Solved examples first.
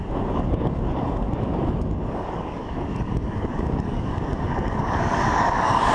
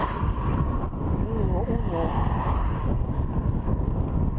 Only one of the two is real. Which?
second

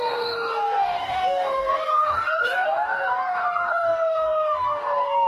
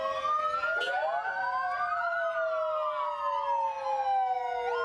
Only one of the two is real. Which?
second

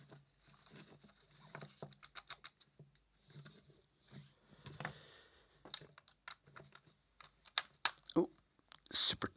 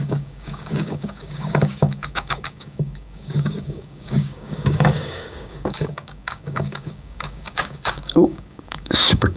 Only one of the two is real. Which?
first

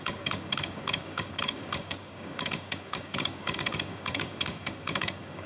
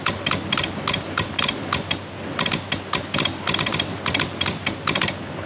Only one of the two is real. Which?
second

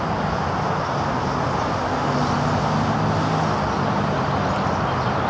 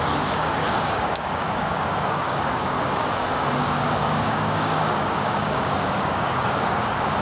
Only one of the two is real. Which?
first